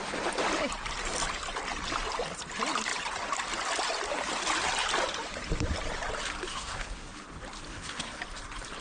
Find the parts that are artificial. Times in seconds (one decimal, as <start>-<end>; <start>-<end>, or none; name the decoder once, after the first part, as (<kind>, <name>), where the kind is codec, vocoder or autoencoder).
6.5-7.1 (codec, SNAC); 7.7-8.2